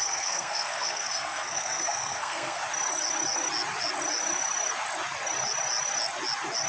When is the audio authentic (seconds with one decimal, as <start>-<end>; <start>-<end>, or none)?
2.6-6.7